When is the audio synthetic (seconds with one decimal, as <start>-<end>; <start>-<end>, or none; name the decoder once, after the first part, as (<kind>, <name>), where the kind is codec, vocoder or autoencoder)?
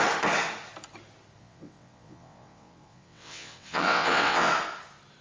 1.4-4.5 (vocoder, WaveNeXt)